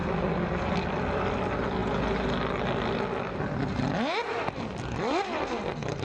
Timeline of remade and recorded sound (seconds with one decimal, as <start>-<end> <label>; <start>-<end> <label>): 0.0-6.0 recorded